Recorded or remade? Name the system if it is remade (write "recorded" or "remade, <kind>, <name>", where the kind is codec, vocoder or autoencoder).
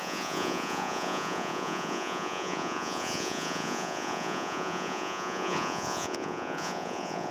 remade, vocoder, Vocos